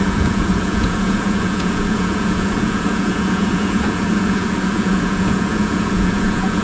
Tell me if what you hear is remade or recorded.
remade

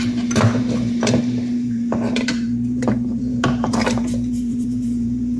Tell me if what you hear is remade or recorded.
remade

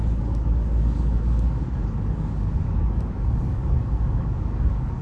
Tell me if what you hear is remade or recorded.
remade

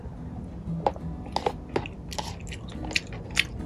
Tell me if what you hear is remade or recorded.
recorded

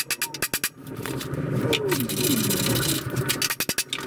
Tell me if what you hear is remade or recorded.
recorded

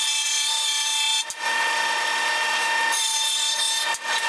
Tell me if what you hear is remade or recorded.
recorded